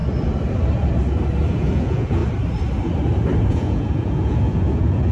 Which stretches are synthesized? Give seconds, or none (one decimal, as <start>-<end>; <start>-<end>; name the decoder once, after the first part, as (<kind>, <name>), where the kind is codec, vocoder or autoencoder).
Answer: 1.5-2.2 (vocoder, Vocos); 3.5-5.1